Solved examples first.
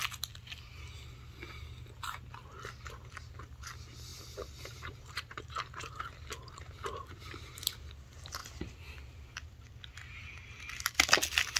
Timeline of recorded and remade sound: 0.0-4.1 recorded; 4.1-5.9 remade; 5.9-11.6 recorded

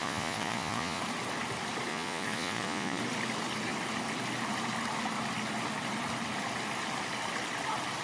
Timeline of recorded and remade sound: 0.0-1.0 remade; 1.0-1.9 recorded; 1.9-3.0 remade; 3.0-8.0 recorded